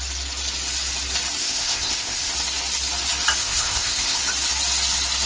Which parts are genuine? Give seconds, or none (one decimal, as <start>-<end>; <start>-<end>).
0.0-1.4; 2.3-3.4; 4.2-5.3